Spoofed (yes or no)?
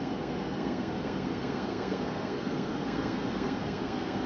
yes